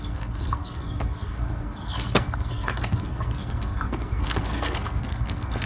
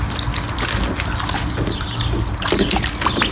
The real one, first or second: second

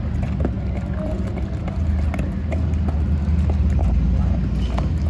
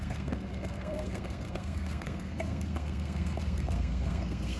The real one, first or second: first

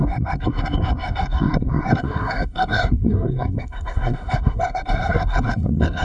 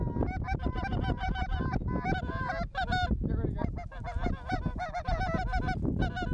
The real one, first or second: second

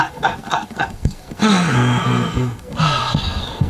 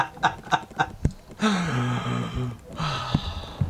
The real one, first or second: second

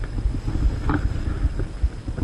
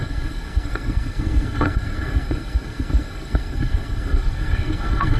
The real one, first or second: first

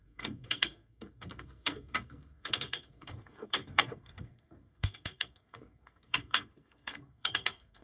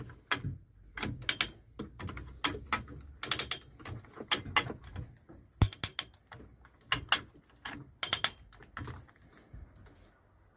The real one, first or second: second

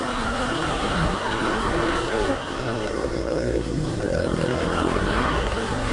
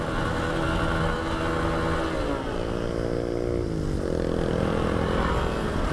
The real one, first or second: second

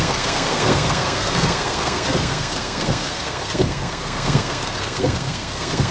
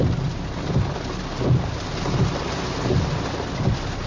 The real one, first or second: second